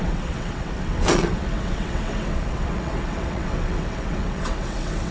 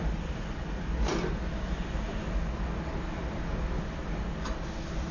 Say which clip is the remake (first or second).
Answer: first